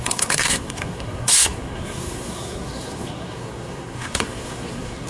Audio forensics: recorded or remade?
remade